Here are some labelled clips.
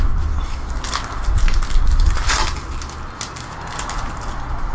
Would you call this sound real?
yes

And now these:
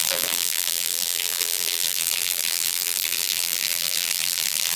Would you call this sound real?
no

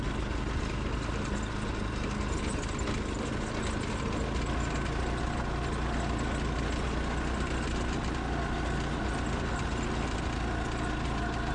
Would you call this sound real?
yes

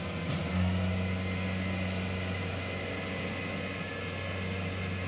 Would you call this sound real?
yes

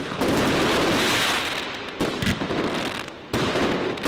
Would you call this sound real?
yes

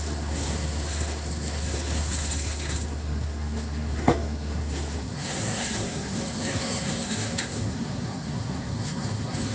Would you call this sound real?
no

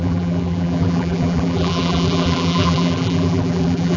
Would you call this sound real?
no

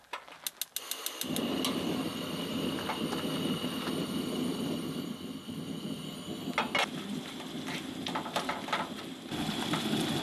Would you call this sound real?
yes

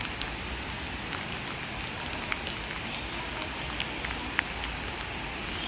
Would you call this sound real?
yes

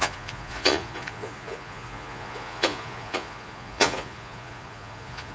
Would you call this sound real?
no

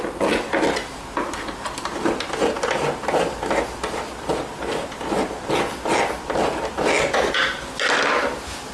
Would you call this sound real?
yes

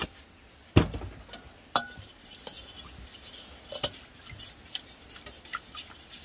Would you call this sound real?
yes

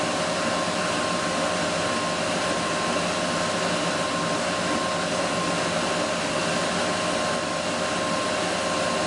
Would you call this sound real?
yes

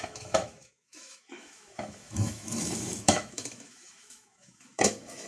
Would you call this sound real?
no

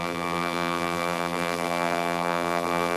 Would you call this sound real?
no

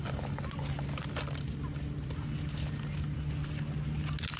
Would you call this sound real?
yes